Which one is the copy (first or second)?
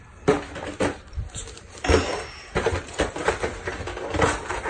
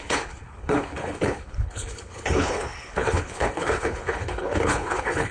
second